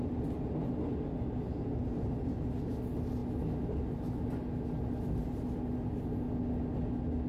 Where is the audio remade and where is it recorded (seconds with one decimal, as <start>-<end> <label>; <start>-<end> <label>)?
0.0-1.8 recorded; 1.8-2.3 remade; 2.3-7.3 recorded